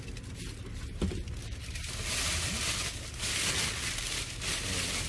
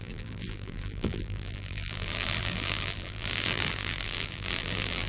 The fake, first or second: second